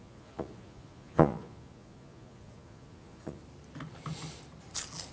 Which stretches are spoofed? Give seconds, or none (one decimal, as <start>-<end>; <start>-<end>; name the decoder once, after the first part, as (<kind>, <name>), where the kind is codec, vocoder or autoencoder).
0.0-3.4 (vocoder, Vocos)